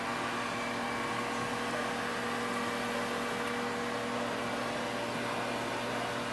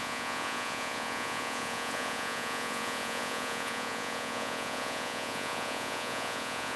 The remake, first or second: second